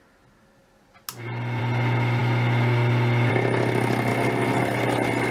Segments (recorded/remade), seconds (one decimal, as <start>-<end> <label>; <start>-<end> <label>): 0.0-5.3 recorded